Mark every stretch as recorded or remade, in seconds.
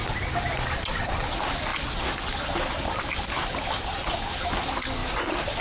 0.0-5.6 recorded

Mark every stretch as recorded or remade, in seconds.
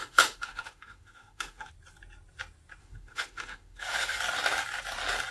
0.0-1.7 remade; 1.7-2.8 recorded; 2.8-4.2 remade; 4.2-5.3 recorded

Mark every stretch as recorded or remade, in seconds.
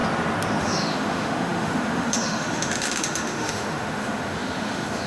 0.0-0.6 recorded; 0.6-5.1 remade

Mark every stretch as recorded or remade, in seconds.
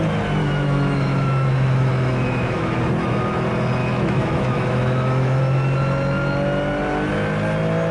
0.0-0.4 recorded; 0.4-2.8 remade; 2.8-3.8 recorded; 3.8-5.4 remade; 5.4-7.9 recorded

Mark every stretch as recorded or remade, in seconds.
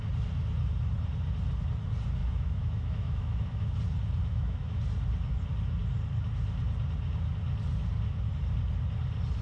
0.0-2.2 recorded; 2.2-3.8 remade; 3.8-4.2 recorded; 4.2-4.8 remade; 4.8-9.4 recorded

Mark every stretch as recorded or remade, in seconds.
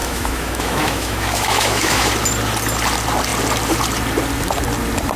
0.0-2.1 remade; 2.1-5.2 recorded